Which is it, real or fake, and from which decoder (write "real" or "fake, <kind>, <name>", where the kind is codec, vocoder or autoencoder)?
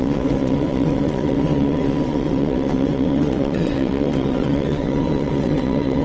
fake, vocoder, WaveNeXt